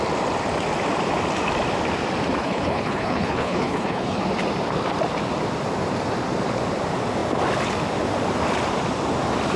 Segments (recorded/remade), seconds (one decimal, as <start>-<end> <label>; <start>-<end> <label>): 0.0-2.4 recorded; 2.4-4.2 remade; 4.2-9.6 recorded

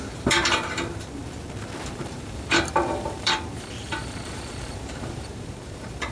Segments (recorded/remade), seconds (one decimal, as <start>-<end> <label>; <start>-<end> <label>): 0.0-1.2 remade; 1.2-1.9 recorded; 1.9-6.1 remade

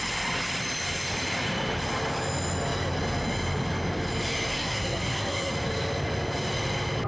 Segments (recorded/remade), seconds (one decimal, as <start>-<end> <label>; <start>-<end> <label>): 0.0-4.5 recorded; 4.5-5.5 remade; 5.5-7.1 recorded

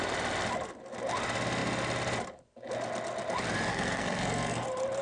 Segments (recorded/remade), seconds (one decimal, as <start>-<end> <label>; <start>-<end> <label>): 0.0-3.7 recorded; 3.7-4.6 remade; 4.6-5.0 recorded

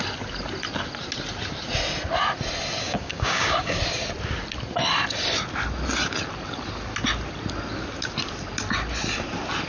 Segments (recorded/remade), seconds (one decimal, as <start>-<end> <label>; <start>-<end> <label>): 0.0-2.8 recorded; 2.8-3.8 remade; 3.8-9.7 recorded

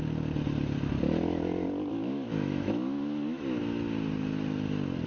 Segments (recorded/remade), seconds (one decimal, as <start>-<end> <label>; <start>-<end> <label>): 0.0-1.9 recorded; 1.9-3.6 remade; 3.6-5.1 recorded